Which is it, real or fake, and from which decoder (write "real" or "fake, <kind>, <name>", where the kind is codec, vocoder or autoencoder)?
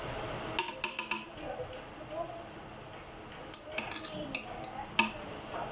real